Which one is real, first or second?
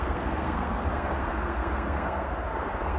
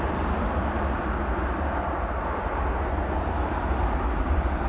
second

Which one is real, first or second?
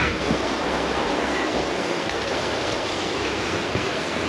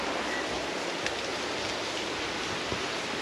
second